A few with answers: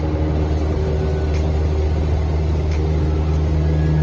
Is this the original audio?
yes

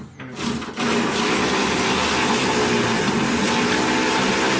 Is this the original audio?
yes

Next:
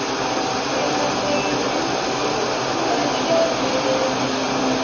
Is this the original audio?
yes